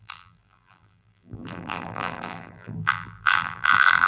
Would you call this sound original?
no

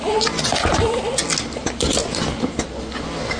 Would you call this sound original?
yes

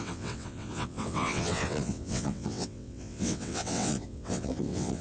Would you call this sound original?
no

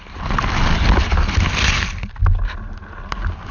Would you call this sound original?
yes